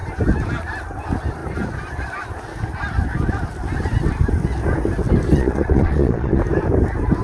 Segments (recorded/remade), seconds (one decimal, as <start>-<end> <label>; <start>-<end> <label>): 0.0-5.3 recorded; 5.3-6.4 remade; 6.4-7.2 recorded